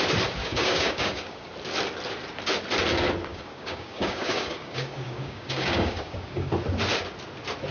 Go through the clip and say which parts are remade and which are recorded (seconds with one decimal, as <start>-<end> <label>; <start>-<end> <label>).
0.0-0.4 recorded; 0.4-1.5 remade; 1.5-3.3 recorded; 3.3-6.5 remade; 6.5-7.7 recorded